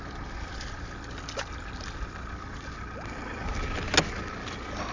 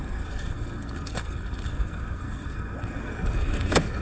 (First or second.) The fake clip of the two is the second